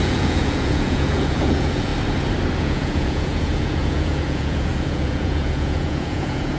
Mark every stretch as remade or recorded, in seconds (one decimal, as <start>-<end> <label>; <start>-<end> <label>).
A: 0.0-1.9 remade; 1.9-2.6 recorded; 2.6-6.6 remade